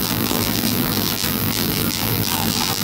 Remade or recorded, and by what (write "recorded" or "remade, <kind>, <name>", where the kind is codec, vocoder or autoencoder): remade, vocoder, BigVGAN v2